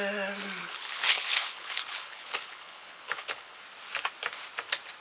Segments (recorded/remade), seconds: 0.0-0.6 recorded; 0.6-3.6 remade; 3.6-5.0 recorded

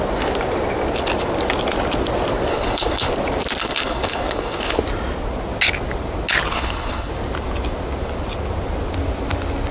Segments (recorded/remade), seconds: 0.0-2.5 recorded; 2.5-3.1 remade; 3.1-3.6 recorded; 3.6-4.8 remade; 4.8-6.5 recorded; 6.5-7.1 remade; 7.1-9.7 recorded

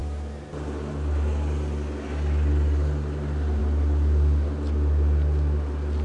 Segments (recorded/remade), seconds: 0.0-6.0 recorded

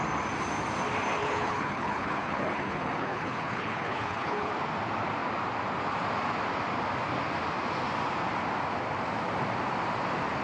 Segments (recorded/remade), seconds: 0.0-1.2 recorded; 1.2-4.5 remade; 4.5-10.4 recorded

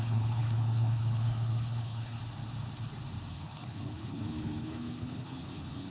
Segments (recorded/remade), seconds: 0.0-2.2 remade; 2.2-3.3 recorded; 3.3-5.9 remade

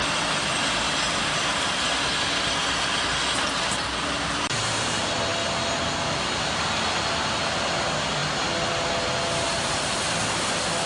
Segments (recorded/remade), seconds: 0.0-10.9 recorded

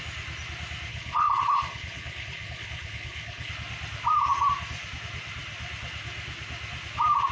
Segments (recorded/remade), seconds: 0.0-0.9 recorded; 0.9-3.5 remade; 3.5-7.3 recorded

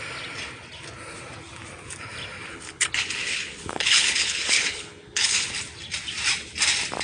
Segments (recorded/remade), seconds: 0.0-2.5 recorded; 2.5-5.5 remade; 5.5-7.0 recorded